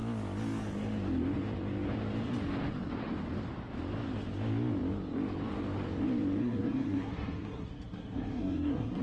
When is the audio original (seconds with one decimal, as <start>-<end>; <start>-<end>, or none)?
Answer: 0.0-6.4

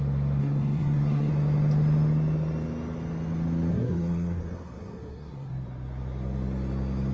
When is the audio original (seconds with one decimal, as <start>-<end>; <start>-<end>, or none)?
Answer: 0.0-0.4; 1.3-3.7; 5.5-7.1

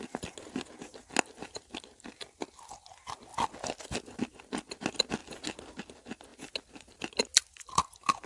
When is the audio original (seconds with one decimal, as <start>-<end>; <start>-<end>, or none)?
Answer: 0.0-8.3

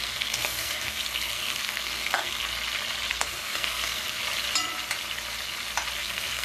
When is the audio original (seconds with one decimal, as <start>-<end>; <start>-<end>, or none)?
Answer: 2.4-3.1; 4.2-6.0

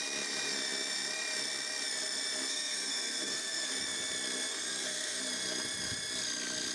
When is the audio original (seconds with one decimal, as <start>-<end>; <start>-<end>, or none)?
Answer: 0.0-2.5; 3.7-4.5; 5.2-6.7

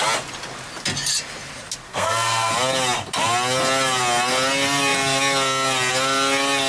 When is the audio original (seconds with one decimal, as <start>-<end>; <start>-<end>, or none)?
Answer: 0.0-1.9; 2.5-6.7

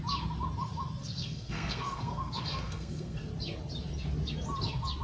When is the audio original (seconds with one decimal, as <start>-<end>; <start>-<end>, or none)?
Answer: 0.0-1.0; 3.3-5.0